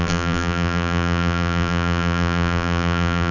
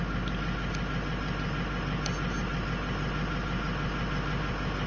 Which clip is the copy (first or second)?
first